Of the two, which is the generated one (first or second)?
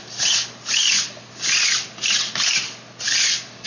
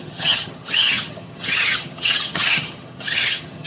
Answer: second